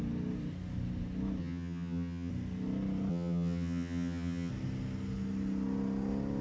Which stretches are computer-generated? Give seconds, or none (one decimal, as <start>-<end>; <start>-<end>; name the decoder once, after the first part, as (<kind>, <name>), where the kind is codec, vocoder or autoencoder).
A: 1.4-2.3 (vocoder, HiFi-GAN); 3.1-4.5